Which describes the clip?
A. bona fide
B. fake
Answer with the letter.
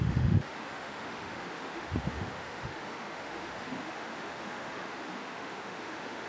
B